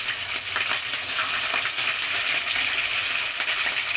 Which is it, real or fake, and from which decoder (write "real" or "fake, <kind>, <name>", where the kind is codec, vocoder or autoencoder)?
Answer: real